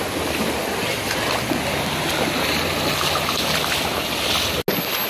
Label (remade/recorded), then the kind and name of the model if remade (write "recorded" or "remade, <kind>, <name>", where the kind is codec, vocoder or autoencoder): recorded